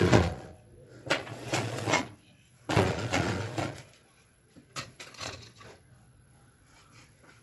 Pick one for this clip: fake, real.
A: fake